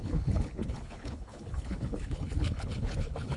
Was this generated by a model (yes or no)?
yes